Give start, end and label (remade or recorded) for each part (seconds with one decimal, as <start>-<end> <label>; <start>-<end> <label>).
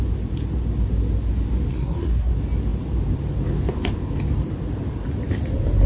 0.0-1.7 recorded; 1.7-2.3 remade; 2.3-5.9 recorded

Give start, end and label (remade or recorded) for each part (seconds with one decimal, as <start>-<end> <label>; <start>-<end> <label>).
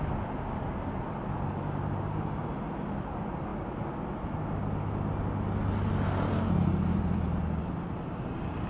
0.0-8.7 recorded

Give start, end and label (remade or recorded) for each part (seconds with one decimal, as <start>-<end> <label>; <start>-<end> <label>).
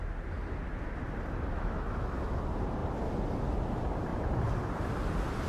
0.0-1.5 recorded; 1.5-2.4 remade; 2.4-5.5 recorded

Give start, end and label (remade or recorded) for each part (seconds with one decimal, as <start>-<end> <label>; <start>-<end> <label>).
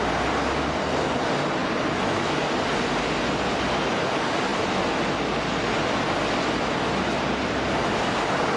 0.0-8.6 recorded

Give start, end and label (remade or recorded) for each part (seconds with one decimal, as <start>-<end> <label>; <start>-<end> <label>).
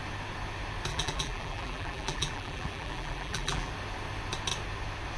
0.0-0.9 recorded; 0.9-3.7 remade; 3.7-5.2 recorded